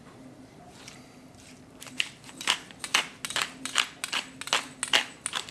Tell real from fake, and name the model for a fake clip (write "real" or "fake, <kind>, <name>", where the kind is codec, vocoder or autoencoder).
real